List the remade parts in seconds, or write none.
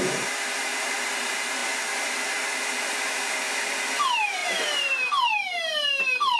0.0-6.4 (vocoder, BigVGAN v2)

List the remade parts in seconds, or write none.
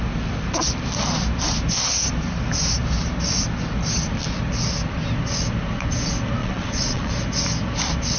6.4-7.1 (vocoder, Vocos)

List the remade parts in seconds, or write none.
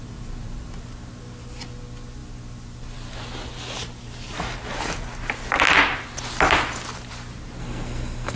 7.6-8.4 (codec, SNAC)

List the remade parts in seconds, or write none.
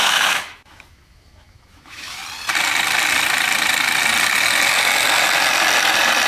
0.0-2.2 (autoencoder, DAC-VAE)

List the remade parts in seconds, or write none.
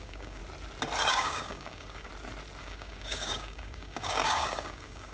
0.0-0.4 (codec, DAC); 1.1-2.1; 2.6-5.1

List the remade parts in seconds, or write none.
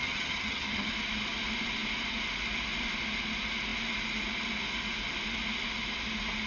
0.0-0.9 (vocoder, HiFi-GAN)